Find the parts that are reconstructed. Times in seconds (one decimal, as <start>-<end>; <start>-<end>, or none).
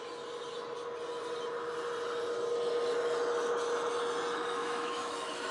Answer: 4.6-5.5